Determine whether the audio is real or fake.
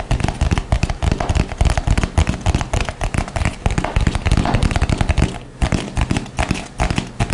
real